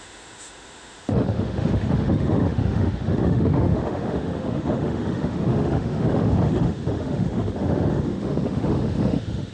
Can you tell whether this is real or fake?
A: fake